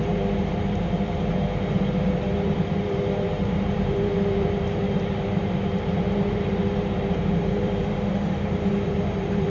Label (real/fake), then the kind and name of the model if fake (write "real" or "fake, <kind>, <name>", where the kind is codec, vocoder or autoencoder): fake, vocoder, BigVGAN v2